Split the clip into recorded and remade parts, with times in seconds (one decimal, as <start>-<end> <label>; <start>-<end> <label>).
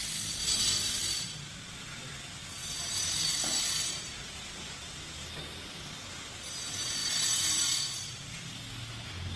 0.0-9.4 recorded